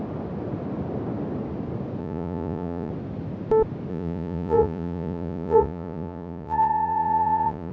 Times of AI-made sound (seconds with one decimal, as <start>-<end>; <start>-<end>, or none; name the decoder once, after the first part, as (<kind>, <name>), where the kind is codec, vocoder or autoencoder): 2.0-2.9 (vocoder, Vocos); 3.9-7.7